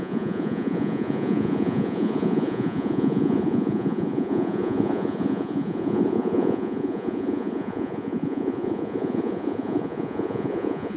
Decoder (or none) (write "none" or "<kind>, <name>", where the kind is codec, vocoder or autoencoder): vocoder, Vocos